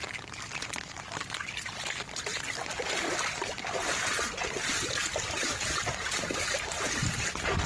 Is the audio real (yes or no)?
yes